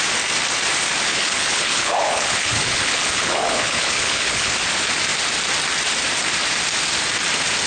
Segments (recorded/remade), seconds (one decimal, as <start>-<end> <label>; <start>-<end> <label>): 0.0-1.1 recorded; 1.1-4.5 remade; 4.5-7.7 recorded